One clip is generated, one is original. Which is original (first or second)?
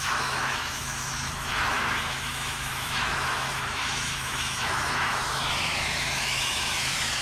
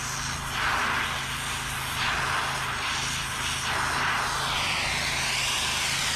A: second